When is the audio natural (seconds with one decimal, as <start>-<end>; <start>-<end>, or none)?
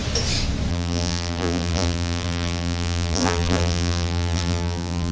0.0-0.7